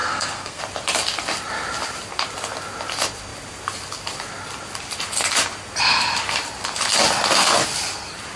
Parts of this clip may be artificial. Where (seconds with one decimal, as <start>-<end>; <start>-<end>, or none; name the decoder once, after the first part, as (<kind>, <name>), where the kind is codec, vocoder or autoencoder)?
0.0-0.6 (codec, SNAC)